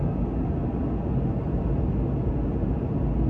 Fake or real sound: real